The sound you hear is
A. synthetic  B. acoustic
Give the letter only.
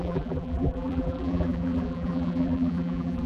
A